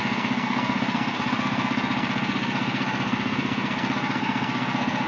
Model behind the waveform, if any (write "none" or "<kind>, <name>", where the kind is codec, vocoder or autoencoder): codec, SNAC